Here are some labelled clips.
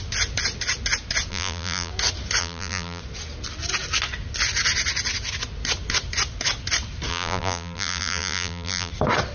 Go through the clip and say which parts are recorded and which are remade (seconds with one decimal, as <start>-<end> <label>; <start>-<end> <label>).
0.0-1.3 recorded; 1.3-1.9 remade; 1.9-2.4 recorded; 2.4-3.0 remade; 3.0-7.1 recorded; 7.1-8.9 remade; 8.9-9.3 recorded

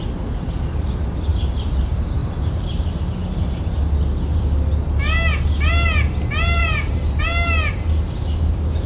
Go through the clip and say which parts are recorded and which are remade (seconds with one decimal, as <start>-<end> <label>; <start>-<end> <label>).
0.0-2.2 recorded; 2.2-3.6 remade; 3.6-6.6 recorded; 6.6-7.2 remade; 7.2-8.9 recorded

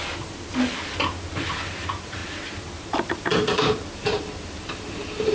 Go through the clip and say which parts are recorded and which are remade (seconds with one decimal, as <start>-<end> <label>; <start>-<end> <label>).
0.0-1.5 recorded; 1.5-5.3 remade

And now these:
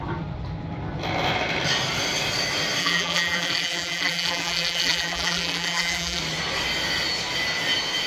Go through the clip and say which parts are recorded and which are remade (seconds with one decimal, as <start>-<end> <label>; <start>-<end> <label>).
0.0-2.8 recorded; 2.8-6.2 remade; 6.2-8.1 recorded

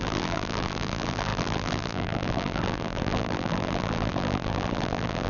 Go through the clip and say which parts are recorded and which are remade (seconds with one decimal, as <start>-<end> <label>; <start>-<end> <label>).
0.0-5.3 remade

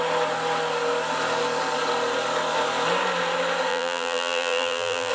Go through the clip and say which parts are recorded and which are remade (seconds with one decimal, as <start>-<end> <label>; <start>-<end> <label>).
0.0-3.7 recorded; 3.7-5.1 remade

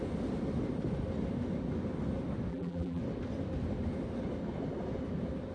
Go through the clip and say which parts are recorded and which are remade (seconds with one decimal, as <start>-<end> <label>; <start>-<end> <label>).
0.0-2.5 recorded; 2.5-3.0 remade; 3.0-5.5 recorded